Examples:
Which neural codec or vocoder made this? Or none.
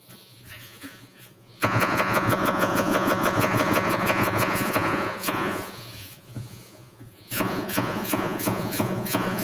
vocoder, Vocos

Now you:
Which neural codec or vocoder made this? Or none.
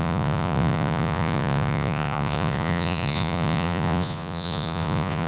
vocoder, Vocos